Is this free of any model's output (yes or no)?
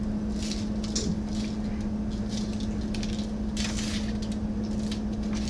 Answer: yes